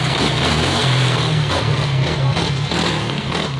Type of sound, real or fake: fake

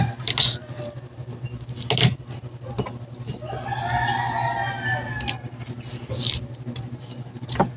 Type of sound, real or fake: real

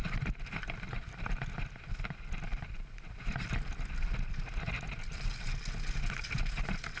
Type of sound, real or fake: real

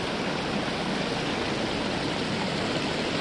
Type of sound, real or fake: real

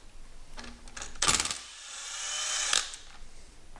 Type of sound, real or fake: real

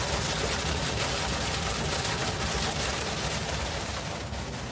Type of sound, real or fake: real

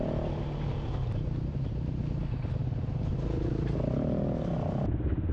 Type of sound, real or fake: real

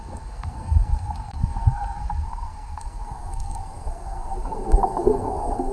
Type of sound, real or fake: fake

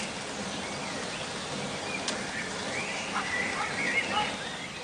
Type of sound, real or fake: real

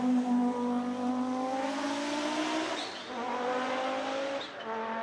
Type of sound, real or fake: real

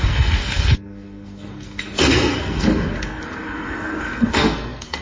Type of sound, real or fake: fake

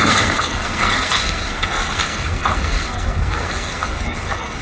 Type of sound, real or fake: fake